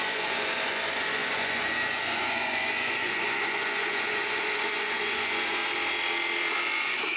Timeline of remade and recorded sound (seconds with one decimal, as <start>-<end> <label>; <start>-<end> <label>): 0.0-5.6 remade; 5.6-6.5 recorded; 6.5-7.2 remade